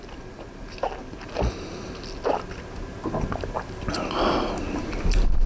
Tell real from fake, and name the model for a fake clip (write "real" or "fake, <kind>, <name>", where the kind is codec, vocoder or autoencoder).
real